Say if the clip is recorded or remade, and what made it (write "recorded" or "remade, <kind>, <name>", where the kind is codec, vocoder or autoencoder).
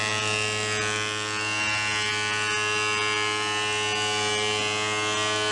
recorded